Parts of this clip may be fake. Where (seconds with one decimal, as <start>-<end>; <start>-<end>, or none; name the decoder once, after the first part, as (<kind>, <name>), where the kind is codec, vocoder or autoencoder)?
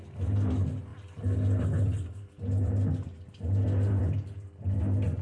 none